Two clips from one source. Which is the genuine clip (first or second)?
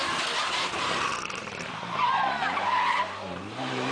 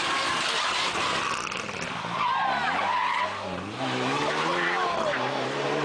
second